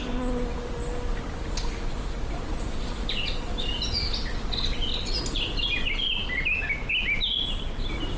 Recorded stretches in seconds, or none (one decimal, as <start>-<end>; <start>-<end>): 0.0-8.2